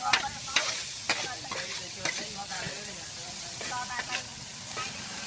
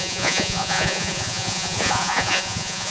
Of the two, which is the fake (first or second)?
second